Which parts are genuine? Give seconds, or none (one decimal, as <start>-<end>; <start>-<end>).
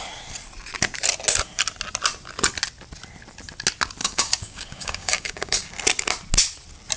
0.0-4.0; 5.7-7.0